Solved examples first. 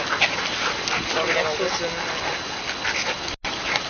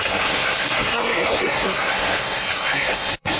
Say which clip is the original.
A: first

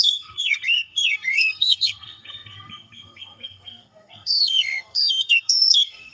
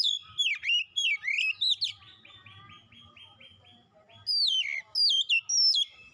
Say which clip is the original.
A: second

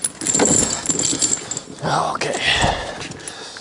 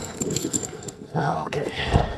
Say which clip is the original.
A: first